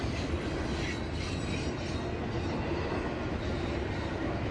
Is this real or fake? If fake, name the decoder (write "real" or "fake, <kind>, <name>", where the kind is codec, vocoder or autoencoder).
real